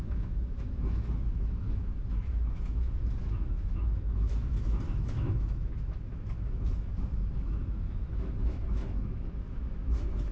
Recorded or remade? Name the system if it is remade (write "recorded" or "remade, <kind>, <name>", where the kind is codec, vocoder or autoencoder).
remade, autoencoder, DAC-VAE